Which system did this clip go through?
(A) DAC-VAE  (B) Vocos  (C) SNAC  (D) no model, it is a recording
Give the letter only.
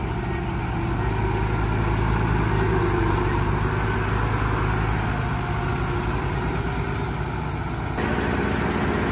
D